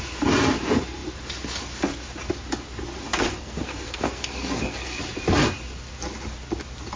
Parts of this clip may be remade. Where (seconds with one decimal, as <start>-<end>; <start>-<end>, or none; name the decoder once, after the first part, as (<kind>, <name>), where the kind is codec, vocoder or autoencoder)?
3.1-5.0 (codec, SNAC)